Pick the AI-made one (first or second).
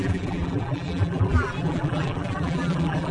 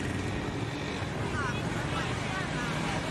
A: first